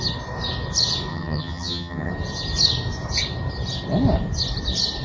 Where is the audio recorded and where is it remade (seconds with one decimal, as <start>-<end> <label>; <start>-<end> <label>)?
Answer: 0.0-1.1 recorded; 1.1-2.1 remade; 2.1-5.0 recorded